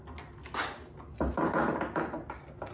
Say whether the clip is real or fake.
real